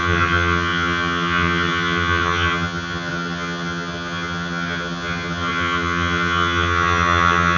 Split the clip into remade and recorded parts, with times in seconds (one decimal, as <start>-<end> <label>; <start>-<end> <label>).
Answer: 0.0-7.6 remade